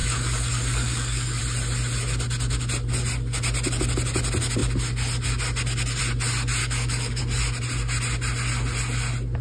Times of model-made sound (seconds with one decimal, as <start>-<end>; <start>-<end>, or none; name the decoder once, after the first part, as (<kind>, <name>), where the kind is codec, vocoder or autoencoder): 0.0-1.4 (codec, DAC); 6.6-7.2